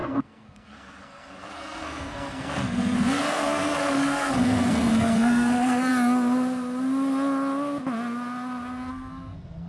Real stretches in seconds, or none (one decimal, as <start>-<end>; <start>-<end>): 5.9-8.9